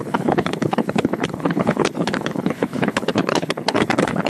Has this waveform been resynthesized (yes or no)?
yes